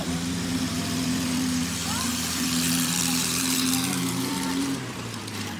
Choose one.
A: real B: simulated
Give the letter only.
B